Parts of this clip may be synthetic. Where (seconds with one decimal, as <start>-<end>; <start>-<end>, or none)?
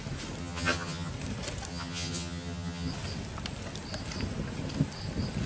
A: 0.4-1.1; 1.7-2.9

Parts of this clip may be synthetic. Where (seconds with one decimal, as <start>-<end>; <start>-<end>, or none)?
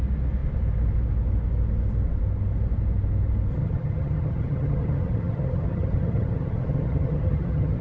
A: 3.5-7.8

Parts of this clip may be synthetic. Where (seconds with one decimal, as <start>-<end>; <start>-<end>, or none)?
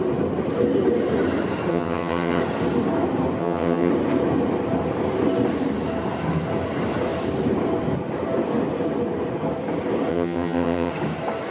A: 1.7-2.4; 3.4-3.9; 10.1-10.9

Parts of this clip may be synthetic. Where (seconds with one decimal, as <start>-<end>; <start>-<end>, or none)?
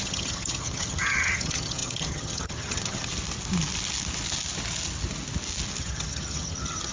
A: 0.0-3.1; 5.8-6.9